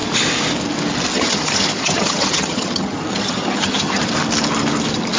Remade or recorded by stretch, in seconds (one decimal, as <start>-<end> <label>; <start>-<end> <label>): 0.0-1.1 recorded; 1.1-4.0 remade; 4.0-5.2 recorded